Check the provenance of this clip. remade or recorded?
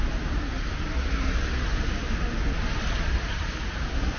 recorded